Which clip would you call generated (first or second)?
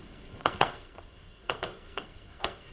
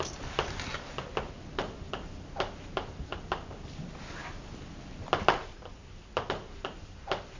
first